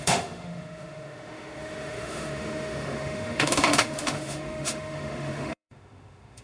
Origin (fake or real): fake